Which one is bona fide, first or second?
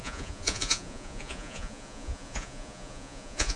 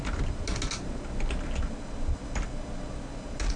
second